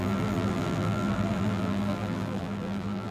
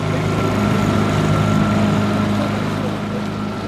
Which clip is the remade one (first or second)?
first